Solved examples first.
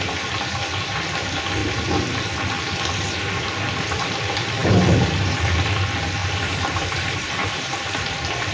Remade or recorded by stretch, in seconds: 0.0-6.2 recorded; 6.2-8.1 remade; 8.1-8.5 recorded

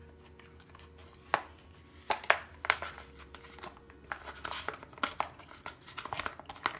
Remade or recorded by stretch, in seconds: 0.0-6.8 recorded

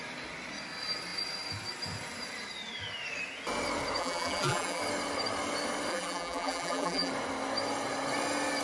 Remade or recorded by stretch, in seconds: 0.0-4.0 recorded; 4.0-4.8 remade; 4.8-5.9 recorded; 5.9-7.1 remade; 7.1-8.6 recorded

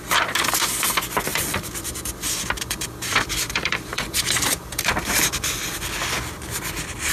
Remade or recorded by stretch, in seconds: 0.0-1.3 recorded; 1.3-5.3 remade; 5.3-7.1 recorded

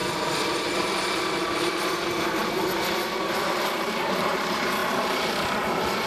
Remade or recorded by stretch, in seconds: 0.0-1.8 remade; 1.8-4.8 recorded; 4.8-6.1 remade

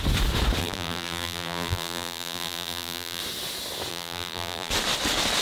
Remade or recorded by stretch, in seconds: 0.0-0.6 recorded; 0.6-3.2 remade; 3.2-3.9 recorded; 3.9-4.7 remade; 4.7-5.4 recorded